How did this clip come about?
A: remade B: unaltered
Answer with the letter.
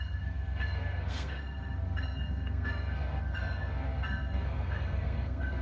A